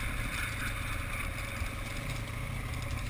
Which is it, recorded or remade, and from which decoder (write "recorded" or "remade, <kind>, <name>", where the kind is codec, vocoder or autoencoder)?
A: recorded